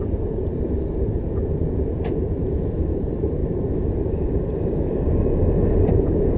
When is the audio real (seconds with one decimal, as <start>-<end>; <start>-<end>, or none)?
none